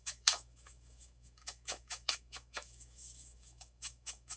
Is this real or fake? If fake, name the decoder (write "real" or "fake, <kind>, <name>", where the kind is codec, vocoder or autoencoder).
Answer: fake, autoencoder, DAC-VAE